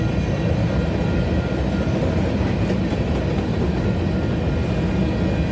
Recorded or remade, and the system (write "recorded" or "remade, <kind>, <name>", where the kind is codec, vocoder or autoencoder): recorded